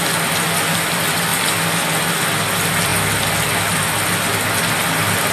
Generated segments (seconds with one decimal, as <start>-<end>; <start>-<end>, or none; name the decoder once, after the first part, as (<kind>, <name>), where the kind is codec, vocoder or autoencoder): none